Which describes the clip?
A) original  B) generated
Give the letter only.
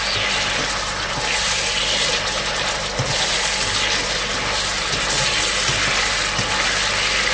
A